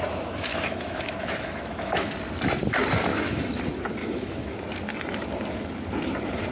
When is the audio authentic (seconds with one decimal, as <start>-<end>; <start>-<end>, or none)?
0.0-0.5; 2.1-3.1; 3.6-4.0; 4.5-6.5